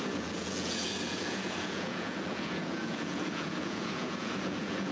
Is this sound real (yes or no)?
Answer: no